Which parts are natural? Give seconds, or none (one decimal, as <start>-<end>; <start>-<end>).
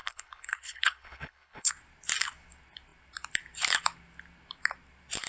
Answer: 1.7-5.3